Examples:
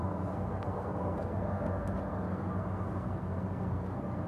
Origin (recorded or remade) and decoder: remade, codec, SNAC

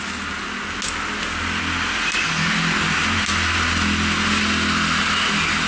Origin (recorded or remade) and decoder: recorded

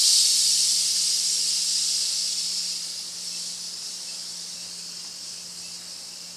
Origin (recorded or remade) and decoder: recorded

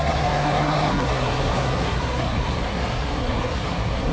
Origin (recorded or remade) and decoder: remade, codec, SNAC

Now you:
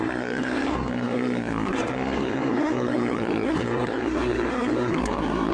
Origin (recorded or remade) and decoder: remade, codec, SNAC